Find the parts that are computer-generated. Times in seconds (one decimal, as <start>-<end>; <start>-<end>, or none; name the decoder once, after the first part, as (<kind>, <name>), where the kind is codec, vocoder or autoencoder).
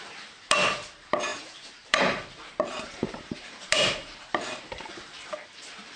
0.0-6.0 (vocoder, BigVGAN v2)